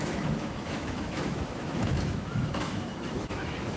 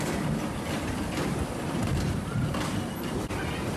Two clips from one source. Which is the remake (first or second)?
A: first